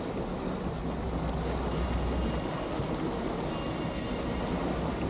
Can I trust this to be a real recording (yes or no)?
yes